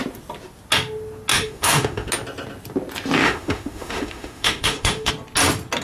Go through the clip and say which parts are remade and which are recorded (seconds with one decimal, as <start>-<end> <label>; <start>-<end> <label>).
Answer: 0.0-1.3 recorded; 1.3-2.1 remade; 2.1-3.2 recorded; 3.2-5.1 remade; 5.1-5.8 recorded